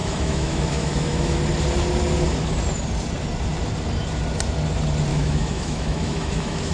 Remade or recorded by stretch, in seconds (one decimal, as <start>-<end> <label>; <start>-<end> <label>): 0.0-1.4 remade; 1.4-5.1 recorded; 5.1-6.7 remade